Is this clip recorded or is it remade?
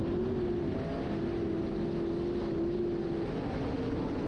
recorded